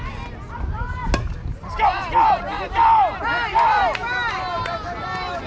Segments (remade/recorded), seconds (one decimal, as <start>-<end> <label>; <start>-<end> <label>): 0.0-5.5 recorded